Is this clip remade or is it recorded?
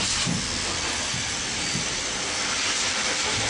recorded